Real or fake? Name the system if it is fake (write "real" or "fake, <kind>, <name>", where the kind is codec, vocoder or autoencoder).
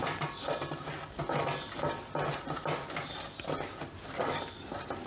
real